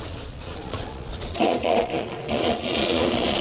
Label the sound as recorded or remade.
remade